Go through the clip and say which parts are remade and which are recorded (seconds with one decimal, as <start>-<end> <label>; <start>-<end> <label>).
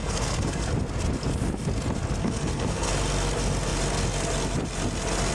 0.0-0.7 remade; 0.7-2.2 recorded; 2.2-2.9 remade; 2.9-5.3 recorded